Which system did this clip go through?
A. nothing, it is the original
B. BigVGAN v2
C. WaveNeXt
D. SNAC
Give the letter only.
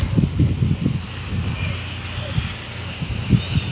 A